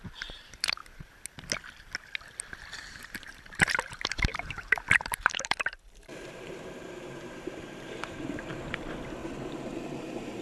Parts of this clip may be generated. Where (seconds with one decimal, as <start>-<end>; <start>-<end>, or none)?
0.0-0.8; 2.9-9.2; 9.8-10.4